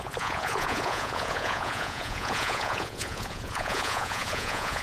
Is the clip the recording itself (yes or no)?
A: no